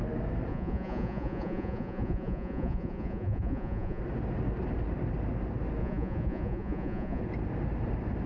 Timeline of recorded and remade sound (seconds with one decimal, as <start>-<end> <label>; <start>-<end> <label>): 0.0-0.5 recorded; 0.5-4.0 remade; 4.0-5.8 recorded; 5.8-7.2 remade; 7.2-8.3 recorded